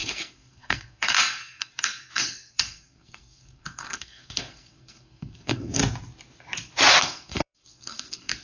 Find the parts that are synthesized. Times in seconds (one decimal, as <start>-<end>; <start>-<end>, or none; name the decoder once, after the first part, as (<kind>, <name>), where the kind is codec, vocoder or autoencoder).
0.0-5.8 (codec, SNAC); 7.0-8.4